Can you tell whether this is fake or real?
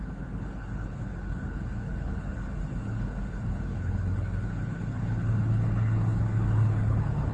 fake